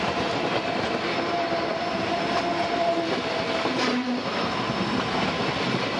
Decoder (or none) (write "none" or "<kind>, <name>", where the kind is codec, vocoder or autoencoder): none